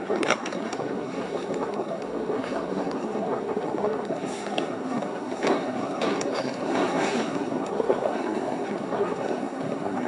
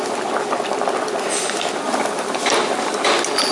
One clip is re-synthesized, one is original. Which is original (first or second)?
second